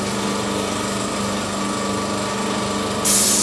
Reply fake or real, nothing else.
real